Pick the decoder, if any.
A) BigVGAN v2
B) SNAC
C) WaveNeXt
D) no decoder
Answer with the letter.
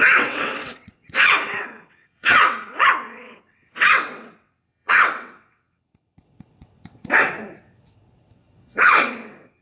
C